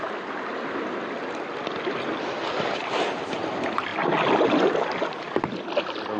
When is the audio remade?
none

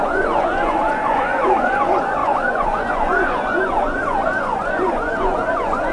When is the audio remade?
0.0-5.9 (vocoder, Vocos)

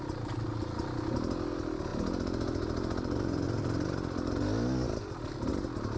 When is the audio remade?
none

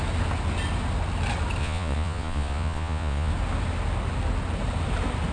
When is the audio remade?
1.6-3.3 (vocoder, Vocos)

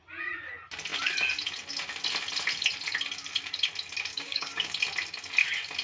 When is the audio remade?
4.1-4.7 (codec, DAC)

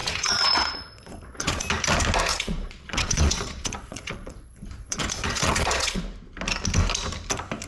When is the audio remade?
0.0-1.6 (vocoder, Vocos); 2.3-6.0

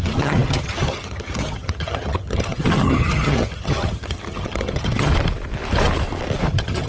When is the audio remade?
0.0-5.1 (vocoder, HiFi-GAN); 6.5-6.9